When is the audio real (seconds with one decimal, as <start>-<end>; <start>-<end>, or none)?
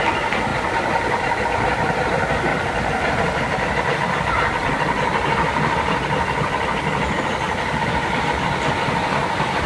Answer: 0.0-9.7